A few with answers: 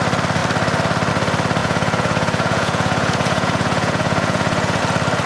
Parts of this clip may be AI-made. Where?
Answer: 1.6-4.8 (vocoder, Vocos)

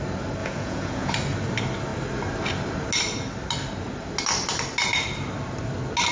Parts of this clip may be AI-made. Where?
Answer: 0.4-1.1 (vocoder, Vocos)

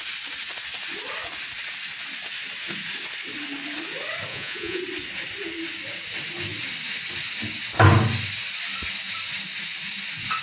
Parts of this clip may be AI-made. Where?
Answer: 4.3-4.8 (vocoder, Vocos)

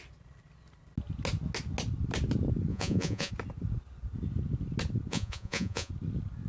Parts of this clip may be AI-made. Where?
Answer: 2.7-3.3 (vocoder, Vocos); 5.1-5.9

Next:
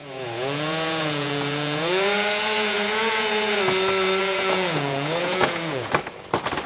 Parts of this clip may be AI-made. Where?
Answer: 0.0-3.6 (vocoder, Vocos); 4.2-5.9